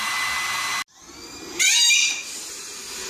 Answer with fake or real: real